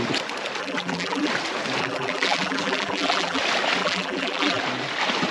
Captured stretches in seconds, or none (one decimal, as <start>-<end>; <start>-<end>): 0.0-0.6; 1.3-1.8; 3.4-3.8; 4.6-5.3

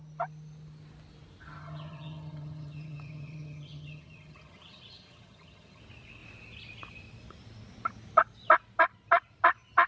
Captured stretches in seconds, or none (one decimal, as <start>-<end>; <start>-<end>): 0.0-1.6; 5.8-9.9

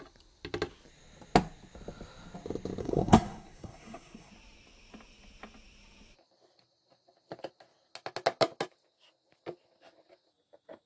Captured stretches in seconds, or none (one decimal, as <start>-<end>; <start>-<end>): 0.0-2.8; 4.3-10.9

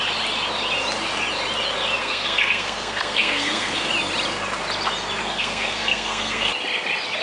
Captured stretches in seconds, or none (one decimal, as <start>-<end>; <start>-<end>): 0.0-2.0; 3.9-5.2; 6.5-7.2